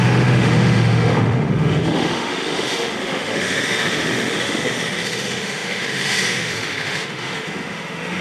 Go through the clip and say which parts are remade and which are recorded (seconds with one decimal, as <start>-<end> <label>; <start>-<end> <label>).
0.0-8.2 remade